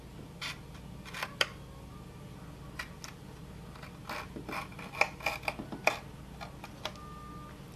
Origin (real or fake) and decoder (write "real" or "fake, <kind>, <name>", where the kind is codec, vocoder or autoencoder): real